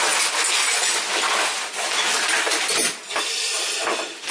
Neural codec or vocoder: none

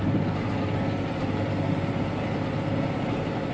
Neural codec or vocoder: none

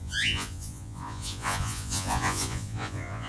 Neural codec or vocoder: vocoder, Vocos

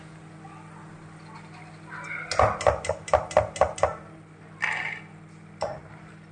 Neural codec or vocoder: none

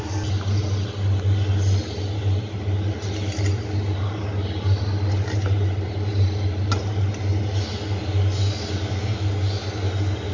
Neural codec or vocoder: none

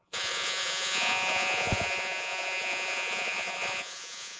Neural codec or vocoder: vocoder, Vocos